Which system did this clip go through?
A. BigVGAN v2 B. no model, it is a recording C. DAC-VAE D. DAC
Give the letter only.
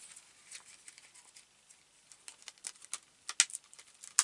B